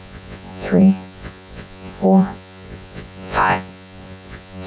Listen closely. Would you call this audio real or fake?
fake